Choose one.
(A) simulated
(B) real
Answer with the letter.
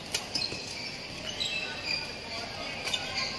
B